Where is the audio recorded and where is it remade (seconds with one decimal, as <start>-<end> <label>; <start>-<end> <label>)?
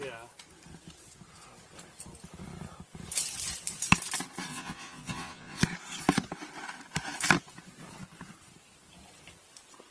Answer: 0.0-4.5 recorded; 4.5-5.6 remade; 5.6-9.9 recorded